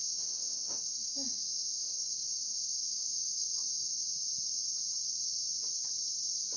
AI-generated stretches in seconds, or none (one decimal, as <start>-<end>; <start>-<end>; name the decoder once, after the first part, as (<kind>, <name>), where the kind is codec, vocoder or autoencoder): 0.0-4.0 (autoencoder, DAC-VAE)